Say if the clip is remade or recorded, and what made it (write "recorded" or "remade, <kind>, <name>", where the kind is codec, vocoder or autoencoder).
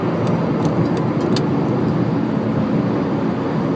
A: recorded